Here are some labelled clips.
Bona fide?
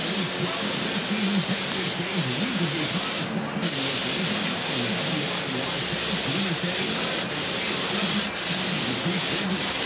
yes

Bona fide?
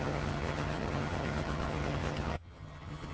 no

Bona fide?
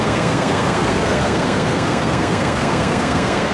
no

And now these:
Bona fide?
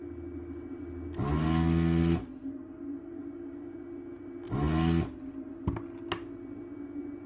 yes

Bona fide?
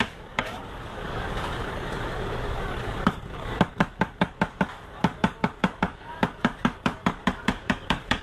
no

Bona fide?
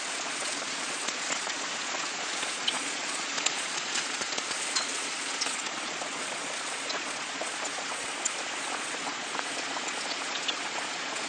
no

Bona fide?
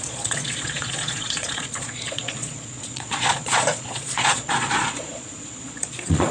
no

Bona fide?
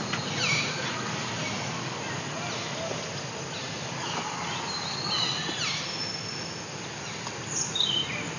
yes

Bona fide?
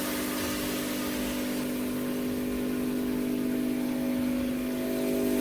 yes